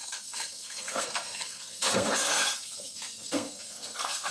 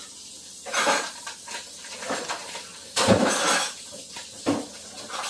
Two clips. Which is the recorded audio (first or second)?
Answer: second